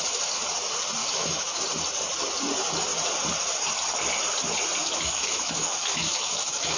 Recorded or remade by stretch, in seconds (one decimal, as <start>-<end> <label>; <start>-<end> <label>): 0.0-1.0 recorded; 1.0-1.6 remade; 1.6-4.8 recorded; 4.8-6.8 remade